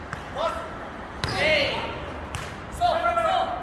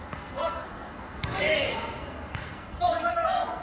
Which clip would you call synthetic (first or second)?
second